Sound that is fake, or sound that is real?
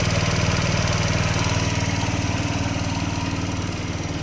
real